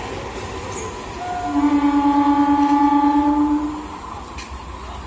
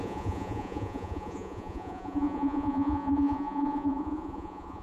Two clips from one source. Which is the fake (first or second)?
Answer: second